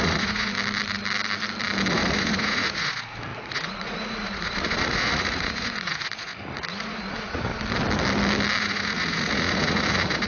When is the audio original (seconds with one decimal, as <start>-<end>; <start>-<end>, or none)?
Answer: 0.5-1.9; 7.5-8.6